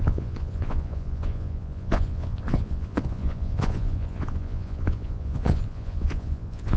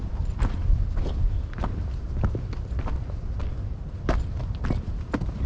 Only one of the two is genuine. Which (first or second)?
second